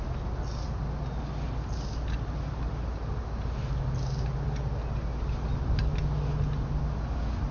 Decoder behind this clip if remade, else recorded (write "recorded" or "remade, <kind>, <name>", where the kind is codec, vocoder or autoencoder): recorded